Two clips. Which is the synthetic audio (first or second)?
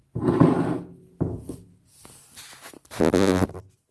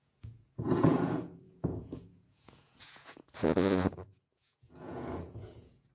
second